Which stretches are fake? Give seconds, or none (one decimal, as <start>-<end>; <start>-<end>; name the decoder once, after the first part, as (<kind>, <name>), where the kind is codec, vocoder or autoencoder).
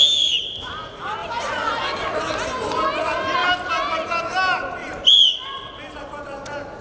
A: 1.2-2.1 (vocoder, BigVGAN v2); 3.4-4.1; 4.8-6.2